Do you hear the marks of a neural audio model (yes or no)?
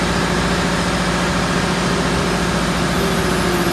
no